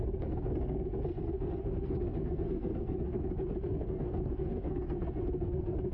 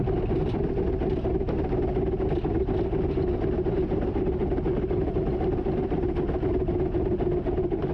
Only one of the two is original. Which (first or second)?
second